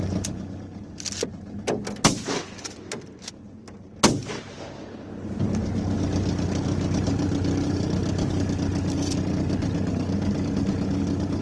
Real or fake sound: real